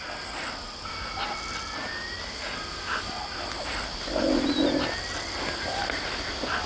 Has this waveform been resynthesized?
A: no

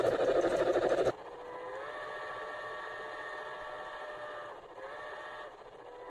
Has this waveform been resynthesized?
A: no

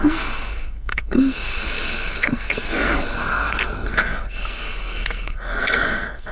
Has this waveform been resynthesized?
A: yes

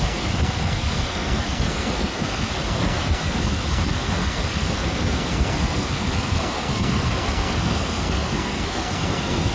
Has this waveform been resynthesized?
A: yes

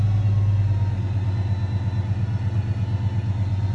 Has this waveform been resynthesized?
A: no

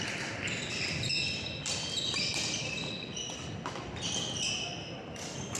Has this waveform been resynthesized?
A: no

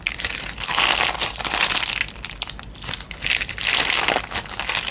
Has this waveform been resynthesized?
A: no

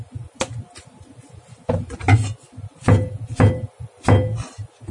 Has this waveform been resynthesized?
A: no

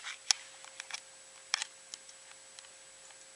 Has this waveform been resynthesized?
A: no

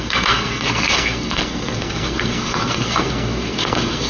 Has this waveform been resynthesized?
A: yes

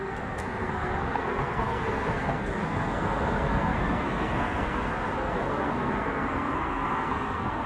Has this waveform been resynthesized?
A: yes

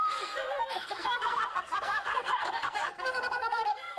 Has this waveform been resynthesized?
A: yes